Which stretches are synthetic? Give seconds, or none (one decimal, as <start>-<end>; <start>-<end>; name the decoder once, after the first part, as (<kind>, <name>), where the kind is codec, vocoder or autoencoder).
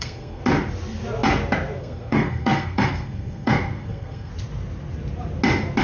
0.0-0.4 (codec, SNAC); 1.8-4.3